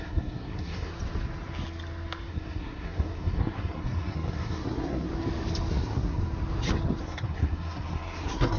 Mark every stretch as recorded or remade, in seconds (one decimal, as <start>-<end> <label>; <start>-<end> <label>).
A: 0.0-0.9 remade; 0.9-2.3 recorded; 2.3-5.1 remade; 5.1-5.7 recorded; 5.7-6.2 remade; 6.2-7.0 recorded; 7.0-8.6 remade